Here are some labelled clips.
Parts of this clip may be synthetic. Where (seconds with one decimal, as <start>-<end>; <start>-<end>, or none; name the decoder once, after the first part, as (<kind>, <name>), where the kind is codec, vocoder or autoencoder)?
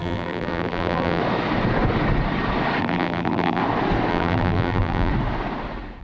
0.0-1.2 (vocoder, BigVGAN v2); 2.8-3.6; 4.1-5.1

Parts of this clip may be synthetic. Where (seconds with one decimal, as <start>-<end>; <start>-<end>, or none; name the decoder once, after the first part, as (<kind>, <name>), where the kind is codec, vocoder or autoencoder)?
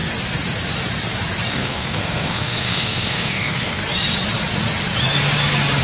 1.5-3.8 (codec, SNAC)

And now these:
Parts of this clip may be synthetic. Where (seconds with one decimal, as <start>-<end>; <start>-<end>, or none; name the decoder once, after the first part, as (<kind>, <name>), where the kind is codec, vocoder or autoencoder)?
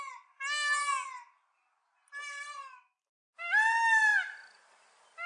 none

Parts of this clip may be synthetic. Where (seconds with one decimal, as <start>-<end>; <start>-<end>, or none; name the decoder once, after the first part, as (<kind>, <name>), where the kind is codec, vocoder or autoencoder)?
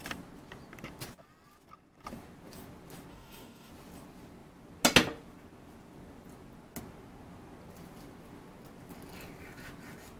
3.1-3.7 (codec, DAC)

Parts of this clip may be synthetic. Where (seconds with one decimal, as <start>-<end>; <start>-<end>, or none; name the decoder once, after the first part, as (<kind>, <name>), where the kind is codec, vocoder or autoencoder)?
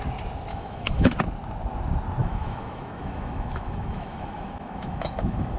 0.5-1.1 (autoencoder, DAC-VAE); 2.2-5.6